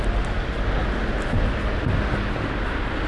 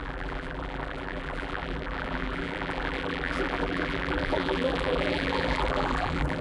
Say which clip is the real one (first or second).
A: first